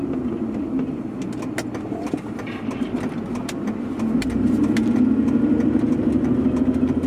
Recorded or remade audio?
recorded